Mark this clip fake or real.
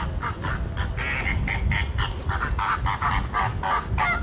real